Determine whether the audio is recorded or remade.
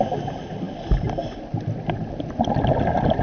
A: recorded